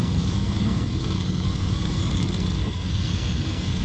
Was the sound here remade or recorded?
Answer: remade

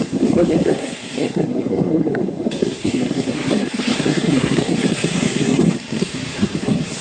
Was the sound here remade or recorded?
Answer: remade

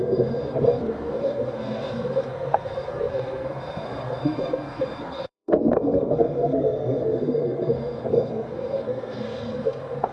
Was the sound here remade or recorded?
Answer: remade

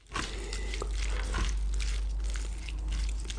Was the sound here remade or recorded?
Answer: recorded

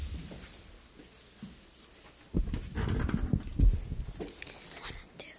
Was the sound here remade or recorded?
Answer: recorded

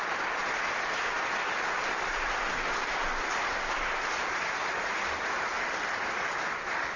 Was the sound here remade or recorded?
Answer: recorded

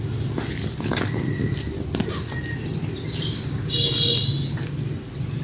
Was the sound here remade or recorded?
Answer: remade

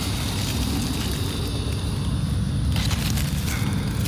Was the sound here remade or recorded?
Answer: recorded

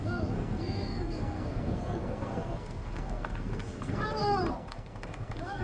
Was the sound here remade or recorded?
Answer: remade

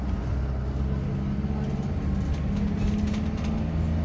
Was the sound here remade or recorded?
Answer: recorded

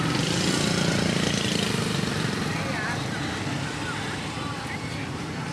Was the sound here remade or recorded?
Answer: recorded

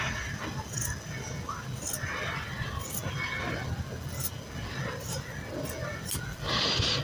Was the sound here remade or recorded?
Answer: recorded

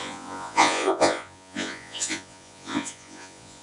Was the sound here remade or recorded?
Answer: remade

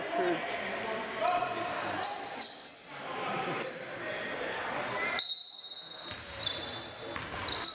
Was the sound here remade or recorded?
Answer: recorded